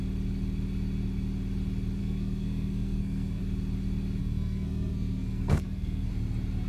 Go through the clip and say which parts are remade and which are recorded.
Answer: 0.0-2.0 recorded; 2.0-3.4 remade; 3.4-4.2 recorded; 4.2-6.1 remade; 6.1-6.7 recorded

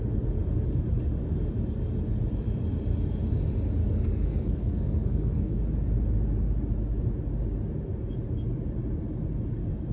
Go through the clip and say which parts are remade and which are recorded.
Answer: 0.0-3.8 recorded; 3.8-5.6 remade; 5.6-9.9 recorded

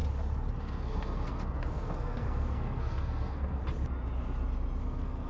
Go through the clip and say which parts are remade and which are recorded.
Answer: 0.0-0.6 recorded; 0.6-3.6 remade; 3.6-4.8 recorded; 4.8-5.3 remade

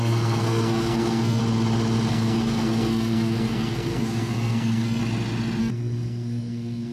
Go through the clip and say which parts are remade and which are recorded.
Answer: 0.0-1.4 remade; 1.4-2.1 recorded; 2.1-5.0 remade; 5.0-5.6 recorded; 5.6-6.9 remade